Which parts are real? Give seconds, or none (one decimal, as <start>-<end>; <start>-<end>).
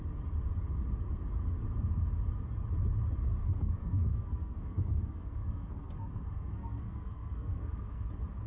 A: 0.0-3.4; 8.1-8.5